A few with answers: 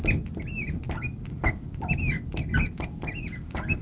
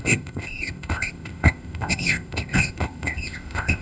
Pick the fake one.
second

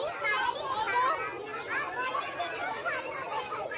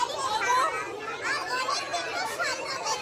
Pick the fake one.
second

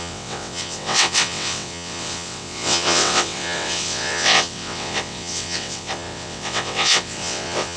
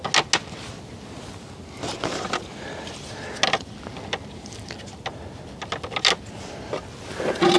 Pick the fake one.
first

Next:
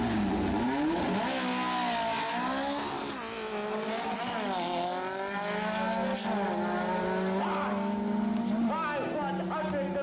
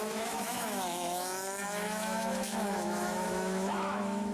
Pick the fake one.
second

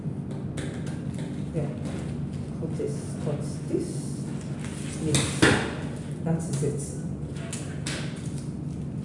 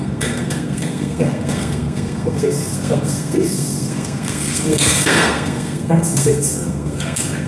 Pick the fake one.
second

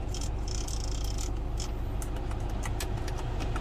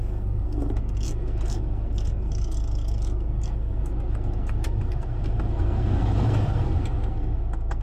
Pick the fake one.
second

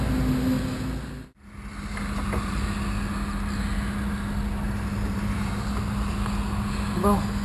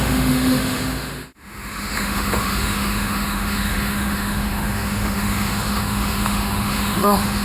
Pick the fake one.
second